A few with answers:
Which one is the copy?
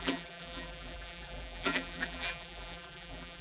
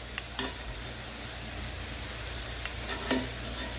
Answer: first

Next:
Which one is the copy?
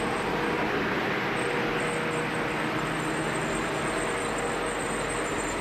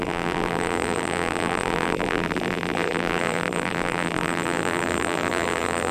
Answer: second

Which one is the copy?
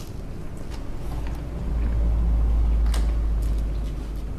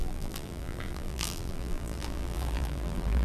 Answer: second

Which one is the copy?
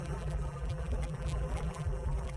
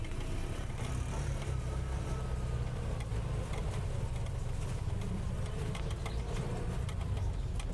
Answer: first